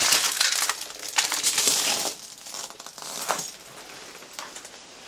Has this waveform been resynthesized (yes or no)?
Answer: no